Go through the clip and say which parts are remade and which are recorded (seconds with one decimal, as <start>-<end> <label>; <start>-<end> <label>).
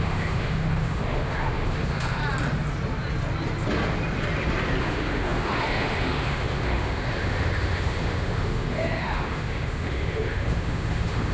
0.0-2.2 remade; 2.2-4.8 recorded; 4.8-11.3 remade